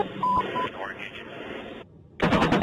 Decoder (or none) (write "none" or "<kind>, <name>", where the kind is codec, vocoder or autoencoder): vocoder, BigVGAN v2